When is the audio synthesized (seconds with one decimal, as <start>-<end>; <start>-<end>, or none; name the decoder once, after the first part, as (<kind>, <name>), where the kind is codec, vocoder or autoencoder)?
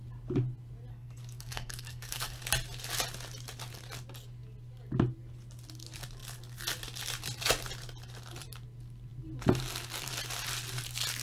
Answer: 0.9-2.4 (codec, SNAC)